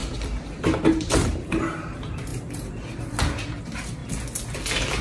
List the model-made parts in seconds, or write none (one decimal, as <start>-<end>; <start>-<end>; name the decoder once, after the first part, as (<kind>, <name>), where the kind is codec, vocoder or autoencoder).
0.8-4.0 (vocoder, BigVGAN v2)